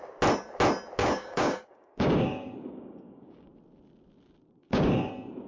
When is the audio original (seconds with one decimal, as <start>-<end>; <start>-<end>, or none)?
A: 0.0-1.0; 3.5-4.6; 5.1-5.5

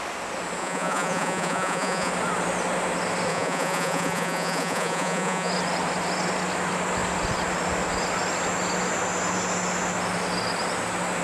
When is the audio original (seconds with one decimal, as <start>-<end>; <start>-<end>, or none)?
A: 0.0-0.6; 2.1-3.3; 5.5-11.2

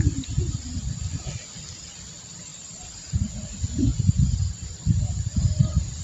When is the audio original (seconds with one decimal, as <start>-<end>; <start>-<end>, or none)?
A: 0.0-2.5; 3.3-6.0

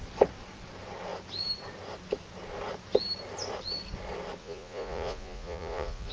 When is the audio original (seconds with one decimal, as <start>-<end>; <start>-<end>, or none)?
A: 0.0-4.4